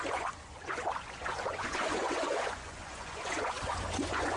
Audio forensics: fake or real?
fake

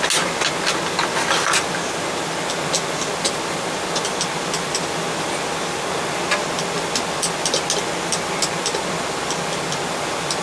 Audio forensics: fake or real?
real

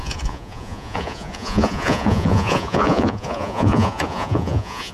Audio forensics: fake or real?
fake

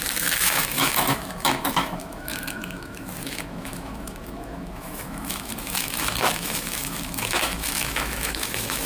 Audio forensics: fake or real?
fake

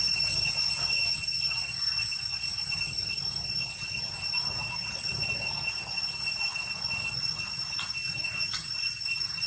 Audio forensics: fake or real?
real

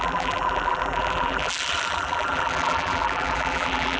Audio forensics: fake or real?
fake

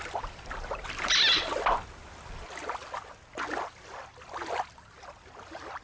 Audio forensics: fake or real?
real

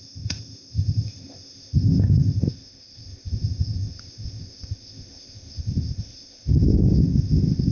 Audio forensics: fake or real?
fake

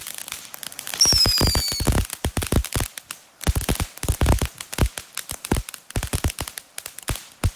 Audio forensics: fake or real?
real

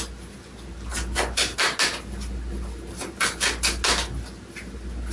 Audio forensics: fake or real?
real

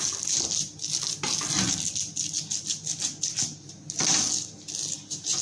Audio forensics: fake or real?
real